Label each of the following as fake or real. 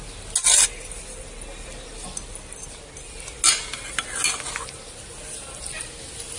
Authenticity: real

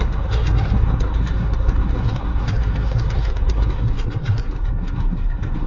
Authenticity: fake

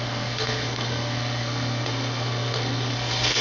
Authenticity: fake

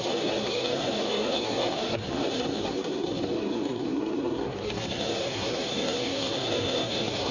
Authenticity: fake